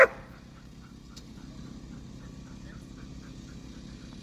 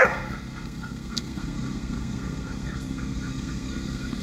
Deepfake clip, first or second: second